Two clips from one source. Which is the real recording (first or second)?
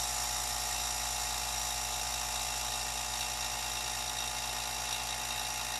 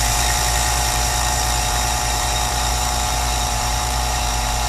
first